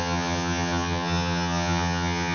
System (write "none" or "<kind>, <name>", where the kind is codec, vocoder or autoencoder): vocoder, HiFi-GAN